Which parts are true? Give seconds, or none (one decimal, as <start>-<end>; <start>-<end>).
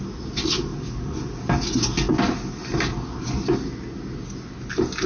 0.0-5.1